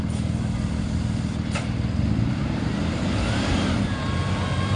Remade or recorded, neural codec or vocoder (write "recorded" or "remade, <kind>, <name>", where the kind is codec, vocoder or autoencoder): recorded